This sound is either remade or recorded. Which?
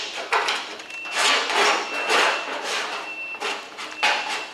recorded